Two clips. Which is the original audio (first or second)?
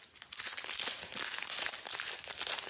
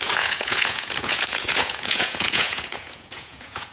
first